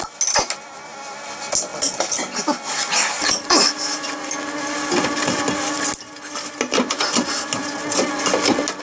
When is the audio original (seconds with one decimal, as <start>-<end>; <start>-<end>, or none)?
0.0-8.8